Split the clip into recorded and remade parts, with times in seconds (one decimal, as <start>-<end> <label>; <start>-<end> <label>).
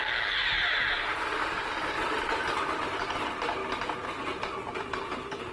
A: 0.0-5.5 recorded